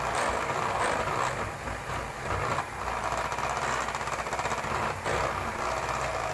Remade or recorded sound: recorded